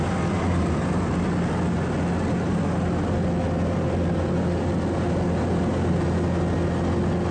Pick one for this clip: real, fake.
real